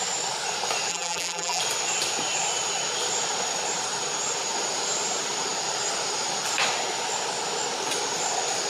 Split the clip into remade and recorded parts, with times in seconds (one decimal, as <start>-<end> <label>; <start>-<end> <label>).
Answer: 0.0-0.9 recorded; 0.9-1.6 remade; 1.6-8.7 recorded